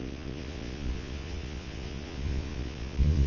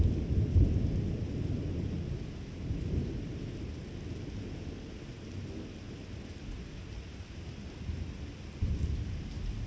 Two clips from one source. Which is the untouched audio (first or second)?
second